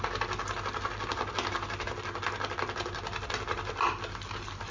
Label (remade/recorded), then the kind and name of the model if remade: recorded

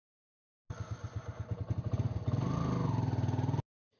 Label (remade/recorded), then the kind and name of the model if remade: recorded